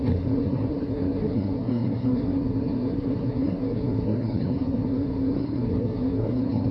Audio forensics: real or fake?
fake